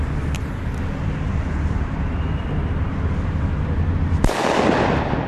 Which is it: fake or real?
real